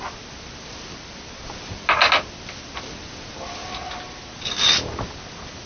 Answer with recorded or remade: recorded